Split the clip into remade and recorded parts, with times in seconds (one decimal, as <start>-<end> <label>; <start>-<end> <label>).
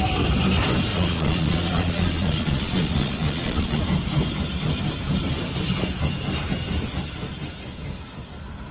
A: 0.0-0.9 recorded; 0.9-3.8 remade; 3.8-8.7 recorded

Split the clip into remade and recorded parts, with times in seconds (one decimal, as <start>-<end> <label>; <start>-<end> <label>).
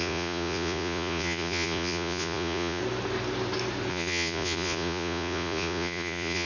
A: 0.0-2.8 remade; 2.8-3.9 recorded; 3.9-6.5 remade